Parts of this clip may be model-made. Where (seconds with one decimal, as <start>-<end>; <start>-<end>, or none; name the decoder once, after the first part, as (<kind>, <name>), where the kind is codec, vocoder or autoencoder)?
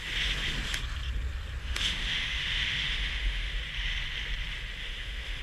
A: 1.6-3.5 (autoencoder, DAC-VAE); 4.8-5.4